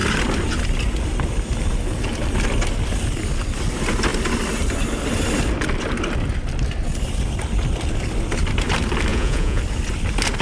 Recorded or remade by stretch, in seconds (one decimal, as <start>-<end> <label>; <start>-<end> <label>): 0.0-9.1 recorded; 9.1-9.6 remade; 9.6-10.4 recorded